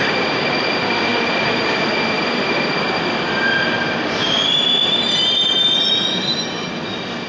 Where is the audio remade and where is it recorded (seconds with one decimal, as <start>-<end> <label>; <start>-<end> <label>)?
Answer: 0.0-7.3 remade